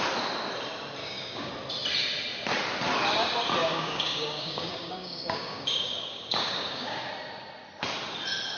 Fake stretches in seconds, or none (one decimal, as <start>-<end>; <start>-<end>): 1.0-1.5; 3.6-7.1